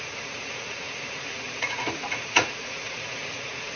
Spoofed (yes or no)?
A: yes